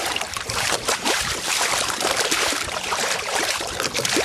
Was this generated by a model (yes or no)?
yes